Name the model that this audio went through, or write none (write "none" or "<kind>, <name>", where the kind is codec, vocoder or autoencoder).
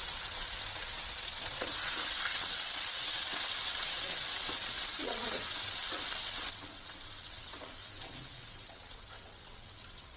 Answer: vocoder, WaveNeXt